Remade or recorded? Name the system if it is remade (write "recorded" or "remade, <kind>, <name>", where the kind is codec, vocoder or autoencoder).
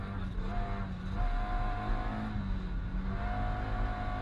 recorded